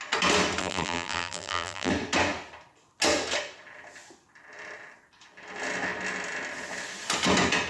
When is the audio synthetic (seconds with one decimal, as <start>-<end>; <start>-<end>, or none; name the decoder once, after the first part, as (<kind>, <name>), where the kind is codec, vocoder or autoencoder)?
0.6-1.9 (vocoder, BigVGAN v2)